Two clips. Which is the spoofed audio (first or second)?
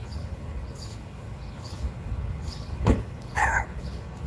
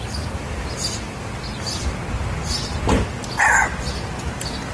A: first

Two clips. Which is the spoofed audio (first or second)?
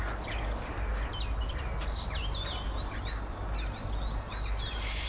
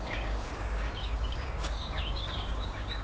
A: second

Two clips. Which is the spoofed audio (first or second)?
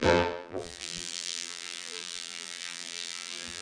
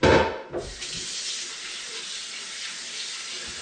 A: first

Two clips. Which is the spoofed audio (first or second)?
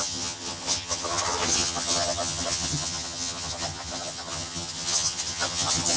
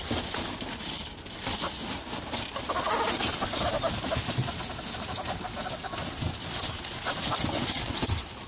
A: first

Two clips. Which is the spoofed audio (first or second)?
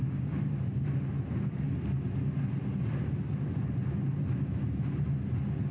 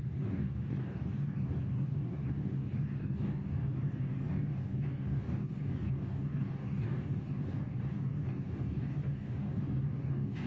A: second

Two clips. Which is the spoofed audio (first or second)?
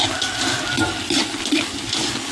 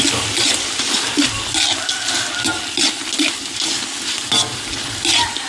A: first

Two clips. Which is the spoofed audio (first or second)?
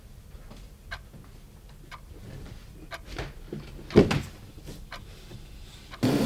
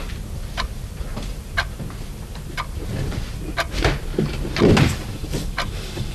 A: second